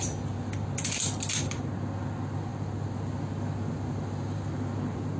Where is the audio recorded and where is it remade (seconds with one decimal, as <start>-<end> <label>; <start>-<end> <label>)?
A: 0.0-5.2 recorded